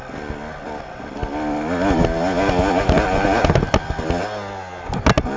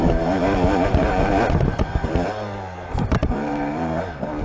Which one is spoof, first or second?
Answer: second